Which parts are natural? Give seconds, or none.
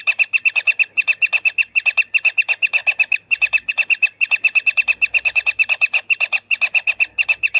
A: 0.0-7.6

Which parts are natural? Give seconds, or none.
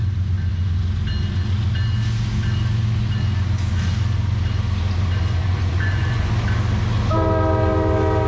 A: 0.0-5.4; 6.3-8.3